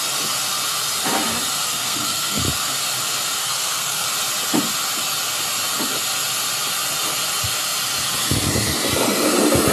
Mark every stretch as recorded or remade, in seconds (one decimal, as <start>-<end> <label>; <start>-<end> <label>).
0.0-1.6 recorded; 1.6-2.4 remade; 2.4-3.4 recorded; 3.4-4.1 remade; 4.1-9.7 recorded